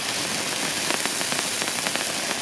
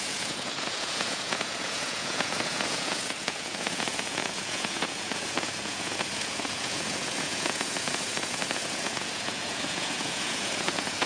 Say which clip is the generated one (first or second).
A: second